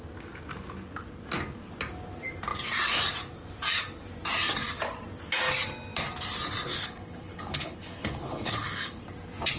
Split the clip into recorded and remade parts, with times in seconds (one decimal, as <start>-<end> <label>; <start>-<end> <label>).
0.0-6.7 recorded; 6.7-9.0 remade; 9.0-9.6 recorded